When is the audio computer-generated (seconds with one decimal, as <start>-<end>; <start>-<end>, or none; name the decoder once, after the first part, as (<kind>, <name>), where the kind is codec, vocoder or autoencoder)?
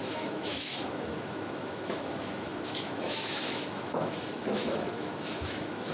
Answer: 0.0-5.9 (autoencoder, DAC-VAE)